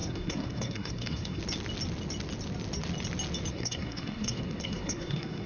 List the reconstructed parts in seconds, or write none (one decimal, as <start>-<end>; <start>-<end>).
0.0-1.4; 3.5-5.5